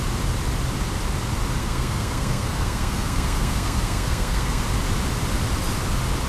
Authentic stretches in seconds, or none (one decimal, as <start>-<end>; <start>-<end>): 0.0-1.6; 4.6-6.3